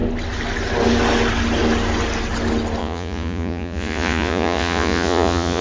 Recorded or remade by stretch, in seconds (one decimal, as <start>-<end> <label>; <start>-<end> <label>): 0.0-2.8 recorded; 2.8-5.6 remade